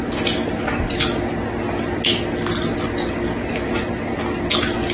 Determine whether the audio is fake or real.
real